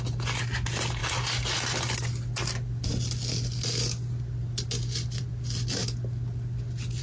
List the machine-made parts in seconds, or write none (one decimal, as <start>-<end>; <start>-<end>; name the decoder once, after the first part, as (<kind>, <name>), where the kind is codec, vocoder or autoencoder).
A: none